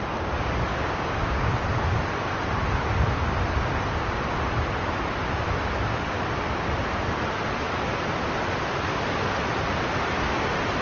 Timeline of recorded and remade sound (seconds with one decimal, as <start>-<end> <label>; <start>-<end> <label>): 0.0-0.7 recorded; 0.7-1.5 remade; 1.5-10.8 recorded